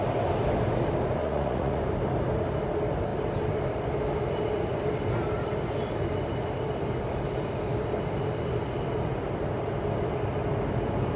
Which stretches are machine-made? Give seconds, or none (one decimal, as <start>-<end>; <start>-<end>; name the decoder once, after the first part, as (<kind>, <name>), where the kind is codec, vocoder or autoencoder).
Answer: 1.2-1.8 (vocoder, Vocos)